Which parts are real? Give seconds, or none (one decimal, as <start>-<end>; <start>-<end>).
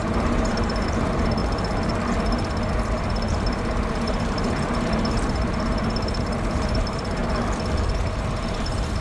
1.4-2.7; 7.2-7.9